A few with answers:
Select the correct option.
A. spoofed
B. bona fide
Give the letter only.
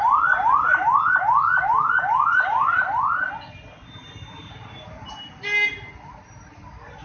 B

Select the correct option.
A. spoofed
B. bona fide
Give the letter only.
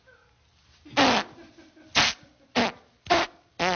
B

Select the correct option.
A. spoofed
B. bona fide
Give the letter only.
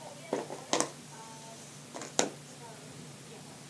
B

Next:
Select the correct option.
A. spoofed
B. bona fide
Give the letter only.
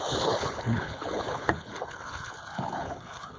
A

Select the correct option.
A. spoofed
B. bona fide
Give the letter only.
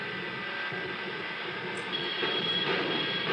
B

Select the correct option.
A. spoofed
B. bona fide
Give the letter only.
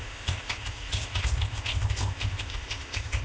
A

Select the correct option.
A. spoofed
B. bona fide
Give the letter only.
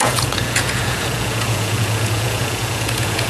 A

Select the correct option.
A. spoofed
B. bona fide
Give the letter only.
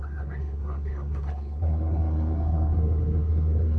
A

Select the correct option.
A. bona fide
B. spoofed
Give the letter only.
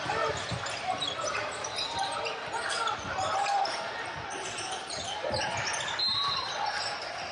A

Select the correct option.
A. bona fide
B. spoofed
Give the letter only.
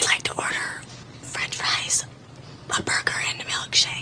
A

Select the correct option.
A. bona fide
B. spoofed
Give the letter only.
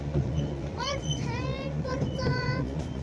B